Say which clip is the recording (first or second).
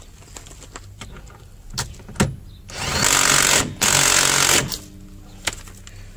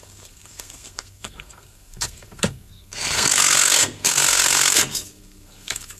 first